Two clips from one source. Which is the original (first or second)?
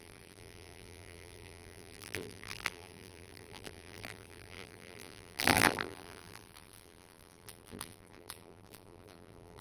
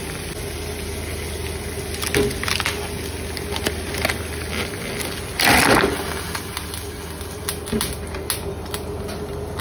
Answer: second